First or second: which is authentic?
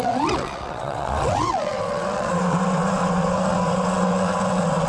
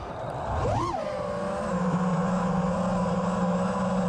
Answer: second